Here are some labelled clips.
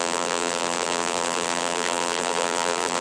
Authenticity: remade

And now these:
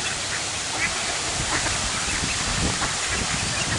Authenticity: remade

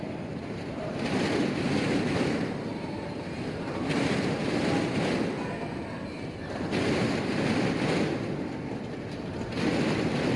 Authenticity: recorded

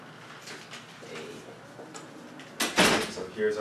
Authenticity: recorded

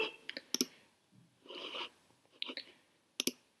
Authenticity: recorded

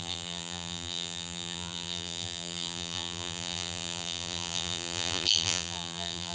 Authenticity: remade